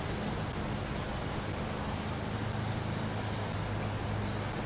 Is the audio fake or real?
real